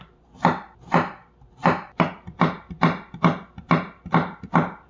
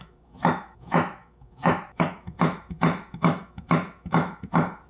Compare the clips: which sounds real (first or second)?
first